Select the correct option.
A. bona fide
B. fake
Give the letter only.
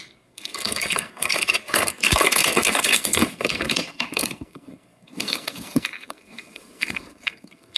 B